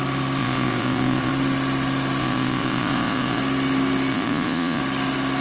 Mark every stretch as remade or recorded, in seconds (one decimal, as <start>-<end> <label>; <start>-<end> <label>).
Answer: 0.0-0.4 recorded; 0.4-1.3 remade; 1.3-2.2 recorded; 2.2-3.4 remade; 3.4-4.1 recorded; 4.1-4.8 remade; 4.8-5.4 recorded